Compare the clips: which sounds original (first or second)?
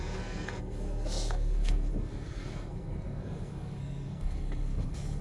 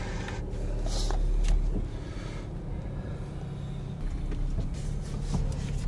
second